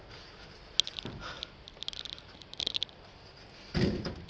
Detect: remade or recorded recorded